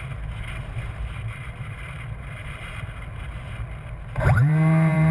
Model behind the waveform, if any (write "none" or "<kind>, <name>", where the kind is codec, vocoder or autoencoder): vocoder, BigVGAN v2